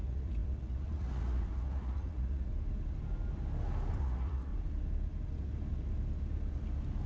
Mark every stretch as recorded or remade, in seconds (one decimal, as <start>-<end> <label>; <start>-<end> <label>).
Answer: 0.0-2.5 remade; 2.5-4.0 recorded; 4.0-4.5 remade; 4.5-7.1 recorded